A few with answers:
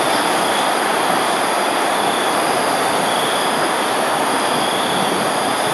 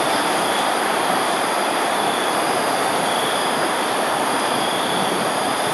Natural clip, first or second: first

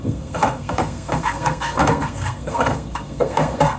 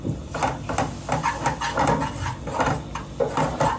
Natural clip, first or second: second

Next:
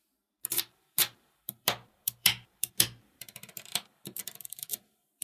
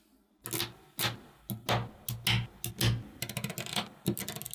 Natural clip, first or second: second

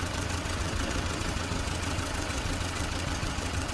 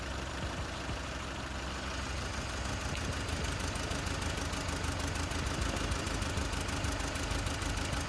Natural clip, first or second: second